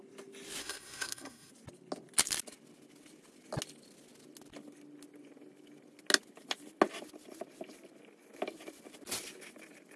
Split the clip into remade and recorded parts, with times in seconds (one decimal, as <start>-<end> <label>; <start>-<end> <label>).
0.0-0.6 recorded; 0.6-1.5 remade; 1.5-10.0 recorded